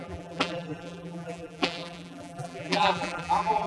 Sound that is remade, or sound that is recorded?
remade